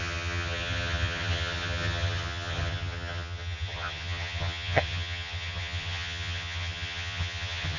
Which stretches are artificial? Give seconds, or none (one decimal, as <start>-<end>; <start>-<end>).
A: 0.0-7.8